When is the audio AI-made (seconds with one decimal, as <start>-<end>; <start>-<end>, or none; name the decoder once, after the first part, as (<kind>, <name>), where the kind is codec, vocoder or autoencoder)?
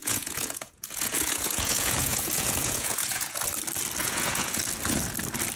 0.0-3.4 (vocoder, Vocos); 4.0-4.6